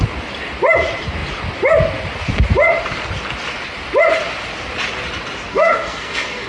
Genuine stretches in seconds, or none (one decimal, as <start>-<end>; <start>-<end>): 0.0-5.5